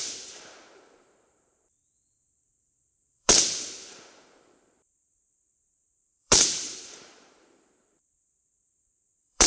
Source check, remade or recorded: remade